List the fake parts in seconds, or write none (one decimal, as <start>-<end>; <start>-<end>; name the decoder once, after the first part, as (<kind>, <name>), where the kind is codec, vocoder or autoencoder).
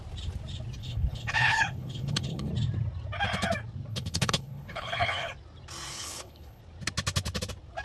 0.8-2.5 (codec, HILCodec); 3.9-5.3; 5.9-6.6